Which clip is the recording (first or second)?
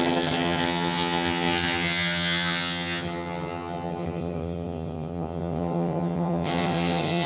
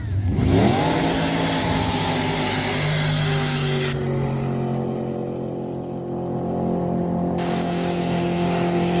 second